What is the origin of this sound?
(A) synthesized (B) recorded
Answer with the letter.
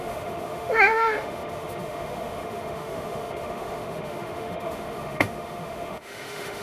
A